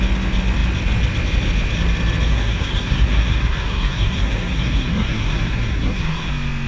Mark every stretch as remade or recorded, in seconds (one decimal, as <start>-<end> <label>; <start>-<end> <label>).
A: 0.0-2.3 recorded; 2.3-6.3 remade; 6.3-6.7 recorded